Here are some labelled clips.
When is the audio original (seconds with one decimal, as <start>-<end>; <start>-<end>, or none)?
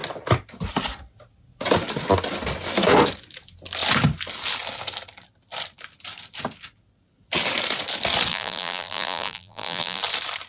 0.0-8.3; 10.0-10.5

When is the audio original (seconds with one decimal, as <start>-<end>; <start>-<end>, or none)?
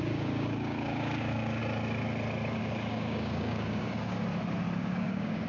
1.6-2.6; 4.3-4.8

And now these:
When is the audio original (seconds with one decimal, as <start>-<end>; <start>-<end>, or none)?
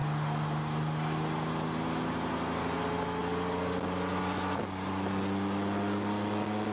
0.0-6.7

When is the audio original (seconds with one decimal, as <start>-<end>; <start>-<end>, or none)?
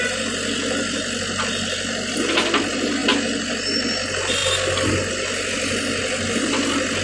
0.0-7.0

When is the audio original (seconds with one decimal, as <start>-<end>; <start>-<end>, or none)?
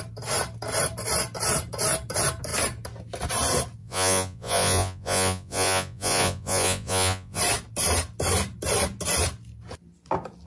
0.0-3.8; 7.4-10.5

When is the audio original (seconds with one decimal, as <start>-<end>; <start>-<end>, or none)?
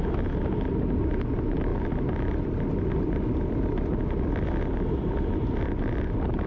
0.0-6.5